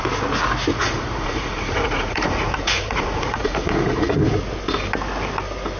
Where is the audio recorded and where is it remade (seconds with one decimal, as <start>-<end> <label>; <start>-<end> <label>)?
0.0-0.7 recorded; 0.7-4.2 remade; 4.2-5.8 recorded